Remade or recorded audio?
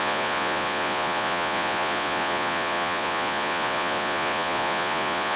remade